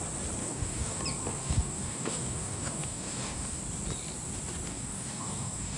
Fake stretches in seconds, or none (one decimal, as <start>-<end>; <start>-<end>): 0.4-1.0; 1.4-3.6; 4.7-5.8